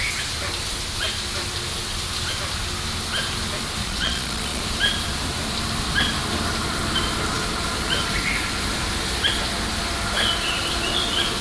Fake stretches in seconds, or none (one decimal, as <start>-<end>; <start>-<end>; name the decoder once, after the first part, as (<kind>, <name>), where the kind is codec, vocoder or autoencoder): 3.8-4.6 (vocoder, Vocos)